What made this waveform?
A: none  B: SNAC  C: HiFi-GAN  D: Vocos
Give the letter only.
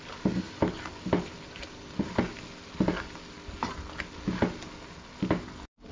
A